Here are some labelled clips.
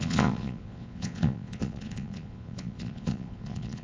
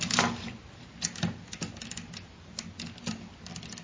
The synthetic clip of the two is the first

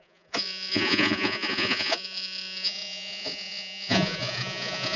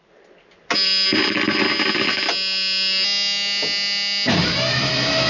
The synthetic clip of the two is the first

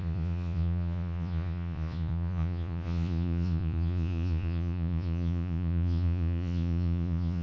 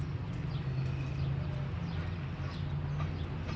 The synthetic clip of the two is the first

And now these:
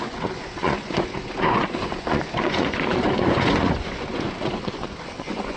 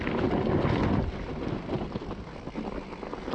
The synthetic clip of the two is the first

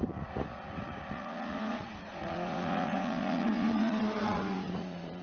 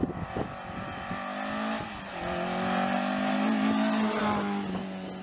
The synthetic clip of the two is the first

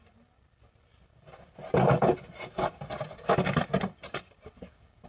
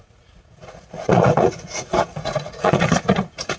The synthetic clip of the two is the second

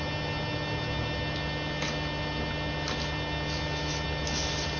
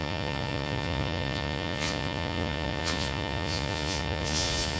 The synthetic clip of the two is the second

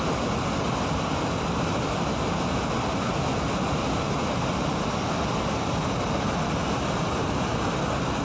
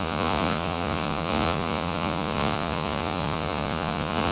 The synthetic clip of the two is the second